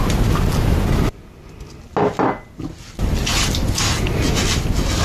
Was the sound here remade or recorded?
recorded